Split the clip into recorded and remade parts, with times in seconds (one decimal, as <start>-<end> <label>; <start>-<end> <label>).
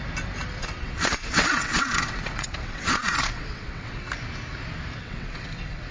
0.0-0.6 recorded; 0.6-4.1 remade; 4.1-5.0 recorded; 5.0-5.9 remade